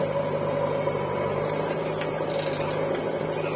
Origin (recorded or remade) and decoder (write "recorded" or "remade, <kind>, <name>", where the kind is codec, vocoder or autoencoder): recorded